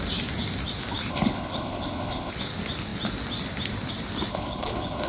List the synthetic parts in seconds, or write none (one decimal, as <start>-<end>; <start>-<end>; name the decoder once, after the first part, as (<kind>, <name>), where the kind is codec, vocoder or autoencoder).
1.1-2.3 (codec, HILCodec); 4.3-5.1